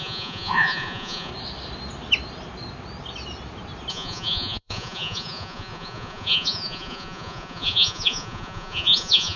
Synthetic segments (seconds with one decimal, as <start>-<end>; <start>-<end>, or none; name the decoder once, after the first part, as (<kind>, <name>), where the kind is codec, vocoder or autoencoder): 0.0-1.3 (vocoder, Vocos); 3.9-9.4